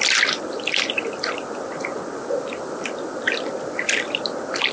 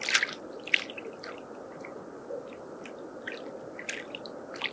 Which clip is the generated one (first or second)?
first